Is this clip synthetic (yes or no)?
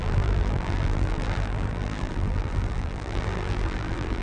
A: yes